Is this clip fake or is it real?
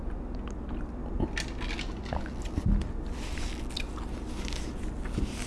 real